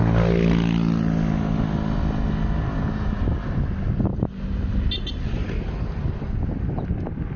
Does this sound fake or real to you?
real